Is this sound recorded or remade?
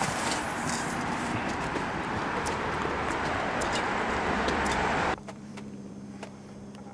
remade